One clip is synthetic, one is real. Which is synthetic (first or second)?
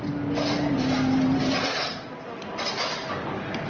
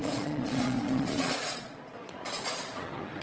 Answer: second